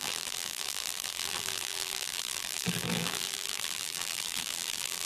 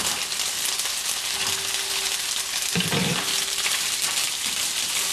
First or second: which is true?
second